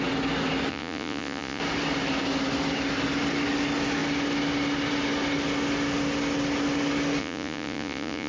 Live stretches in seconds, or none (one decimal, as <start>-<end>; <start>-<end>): 0.0-0.7; 1.6-7.2